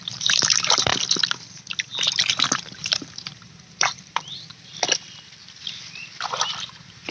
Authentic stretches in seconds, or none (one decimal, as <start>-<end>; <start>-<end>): 0.9-2.2; 4.7-5.6; 6.0-6.6